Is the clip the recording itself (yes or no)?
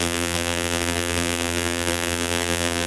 no